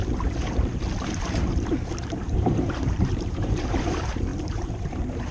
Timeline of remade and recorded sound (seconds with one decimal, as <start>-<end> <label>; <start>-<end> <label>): 0.0-1.1 recorded; 1.1-5.3 remade

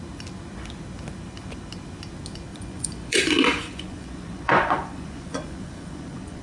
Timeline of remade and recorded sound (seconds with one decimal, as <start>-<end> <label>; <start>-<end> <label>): 0.0-2.5 recorded; 2.5-6.4 remade